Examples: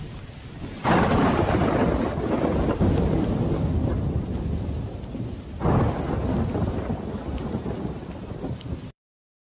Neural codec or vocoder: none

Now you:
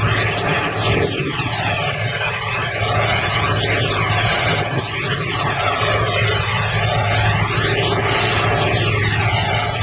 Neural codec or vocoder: none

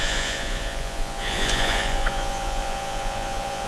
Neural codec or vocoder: vocoder, Vocos